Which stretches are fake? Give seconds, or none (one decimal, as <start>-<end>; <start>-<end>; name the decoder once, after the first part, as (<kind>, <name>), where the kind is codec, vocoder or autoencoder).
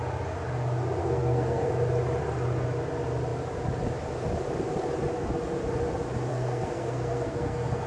1.0-1.7 (codec, SNAC); 6.3-7.9